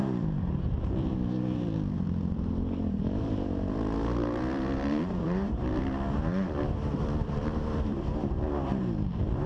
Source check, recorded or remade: remade